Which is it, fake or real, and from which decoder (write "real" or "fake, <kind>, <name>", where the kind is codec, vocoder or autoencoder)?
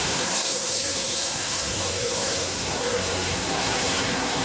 fake, codec, SNAC